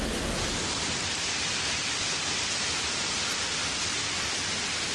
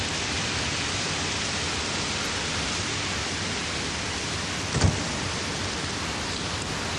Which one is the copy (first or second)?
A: first